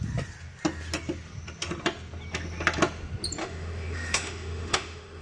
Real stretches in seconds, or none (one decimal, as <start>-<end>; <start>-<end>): 0.0-3.4